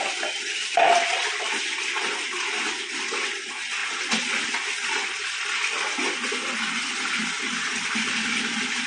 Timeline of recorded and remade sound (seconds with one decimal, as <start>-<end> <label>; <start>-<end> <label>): 0.0-8.9 recorded